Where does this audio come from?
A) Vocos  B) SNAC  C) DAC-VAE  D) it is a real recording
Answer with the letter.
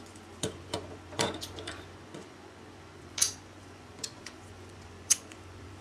A